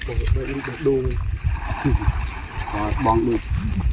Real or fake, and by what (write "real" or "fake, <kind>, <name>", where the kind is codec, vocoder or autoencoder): real